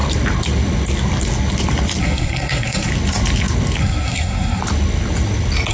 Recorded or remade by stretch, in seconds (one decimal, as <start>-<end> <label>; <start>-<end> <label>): 0.0-2.0 recorded; 2.0-2.9 remade; 2.9-3.8 recorded; 3.8-4.6 remade; 4.6-5.7 recorded